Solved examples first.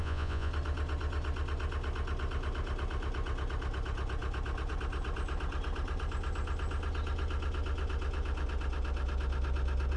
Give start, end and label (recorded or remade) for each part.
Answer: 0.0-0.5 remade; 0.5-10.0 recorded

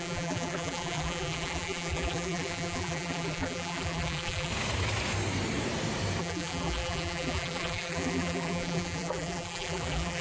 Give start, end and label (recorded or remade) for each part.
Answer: 0.0-4.5 remade; 4.5-6.2 recorded; 6.2-10.2 remade

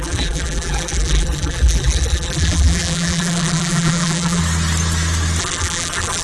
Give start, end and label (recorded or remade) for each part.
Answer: 0.0-4.4 remade; 4.4-5.4 recorded; 5.4-6.2 remade

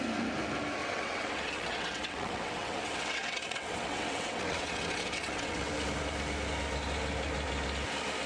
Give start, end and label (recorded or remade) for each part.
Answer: 0.0-0.8 recorded; 0.8-5.7 remade; 5.7-8.3 recorded